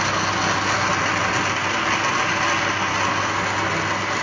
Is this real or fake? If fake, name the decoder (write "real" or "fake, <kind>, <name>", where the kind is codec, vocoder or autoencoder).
real